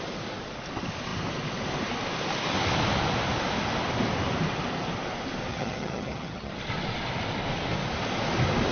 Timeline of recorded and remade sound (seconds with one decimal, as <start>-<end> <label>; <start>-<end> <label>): 0.0-5.5 recorded; 5.5-6.5 remade; 6.5-8.7 recorded